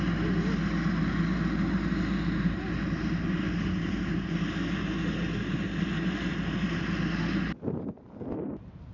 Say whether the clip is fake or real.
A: real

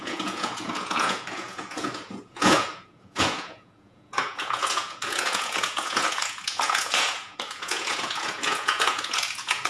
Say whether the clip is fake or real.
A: fake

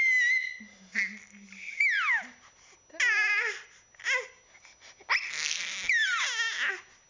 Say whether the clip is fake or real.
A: real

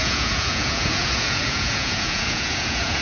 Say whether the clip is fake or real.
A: fake